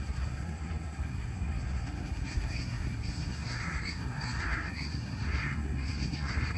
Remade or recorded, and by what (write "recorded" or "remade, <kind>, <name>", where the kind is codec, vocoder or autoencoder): remade, codec, SNAC